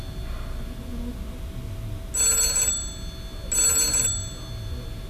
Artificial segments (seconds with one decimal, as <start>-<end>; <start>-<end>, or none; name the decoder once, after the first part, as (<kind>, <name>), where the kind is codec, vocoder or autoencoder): none